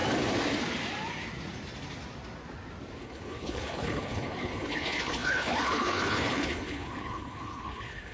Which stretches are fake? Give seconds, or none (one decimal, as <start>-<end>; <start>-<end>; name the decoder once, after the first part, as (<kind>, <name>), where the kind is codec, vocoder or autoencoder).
3.0-8.1 (codec, HILCodec)